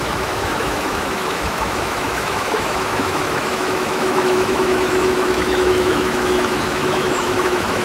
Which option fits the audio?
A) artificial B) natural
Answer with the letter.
A